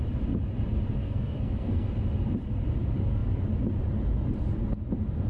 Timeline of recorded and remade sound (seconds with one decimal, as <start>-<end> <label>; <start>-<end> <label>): 0.0-1.0 recorded; 1.0-1.9 remade; 1.9-5.3 recorded